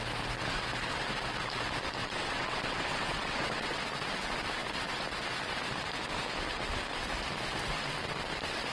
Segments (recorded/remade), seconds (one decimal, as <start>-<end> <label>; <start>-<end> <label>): 0.0-2.0 recorded; 2.0-3.8 remade; 3.8-8.7 recorded